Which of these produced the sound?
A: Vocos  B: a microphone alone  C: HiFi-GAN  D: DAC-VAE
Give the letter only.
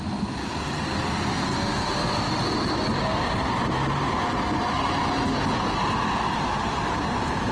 B